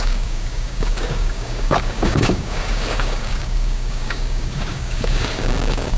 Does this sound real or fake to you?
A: fake